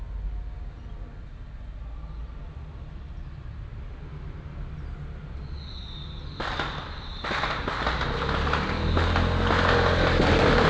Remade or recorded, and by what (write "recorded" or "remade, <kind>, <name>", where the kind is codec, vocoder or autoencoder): recorded